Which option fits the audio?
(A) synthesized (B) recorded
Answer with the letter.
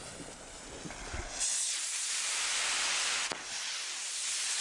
B